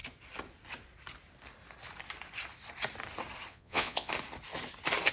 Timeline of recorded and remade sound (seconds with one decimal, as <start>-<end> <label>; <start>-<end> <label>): 0.0-3.5 recorded; 3.5-4.1 remade; 4.1-5.1 recorded

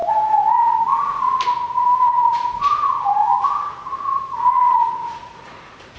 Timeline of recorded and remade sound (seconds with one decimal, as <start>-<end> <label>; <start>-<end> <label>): 0.0-6.0 remade